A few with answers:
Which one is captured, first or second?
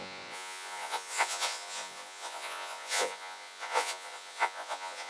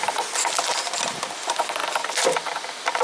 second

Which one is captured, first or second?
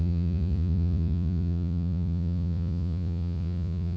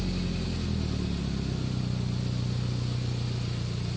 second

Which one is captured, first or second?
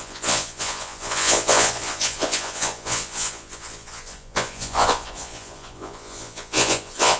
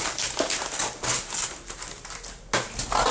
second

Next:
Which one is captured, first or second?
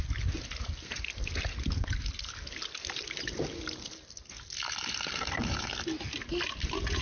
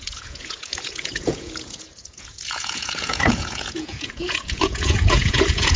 first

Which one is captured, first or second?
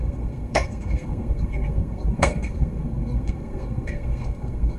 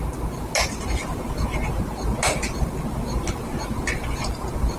second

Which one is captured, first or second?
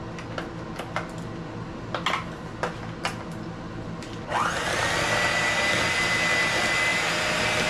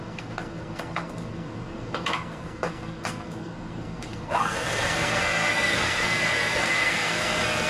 first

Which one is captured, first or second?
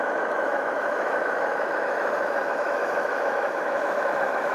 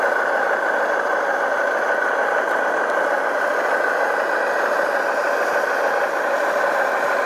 second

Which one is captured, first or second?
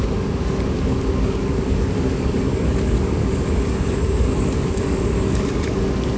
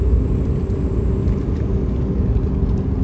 second